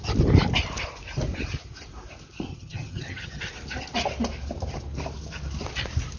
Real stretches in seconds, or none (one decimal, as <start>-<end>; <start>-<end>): 0.0-2.5; 3.4-6.2